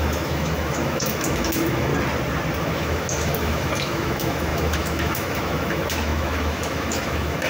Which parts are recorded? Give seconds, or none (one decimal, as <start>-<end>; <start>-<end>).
1.9-2.6